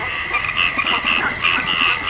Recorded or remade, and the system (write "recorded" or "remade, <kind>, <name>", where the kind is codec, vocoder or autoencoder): recorded